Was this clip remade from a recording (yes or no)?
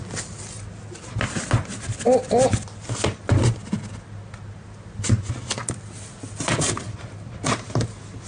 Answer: no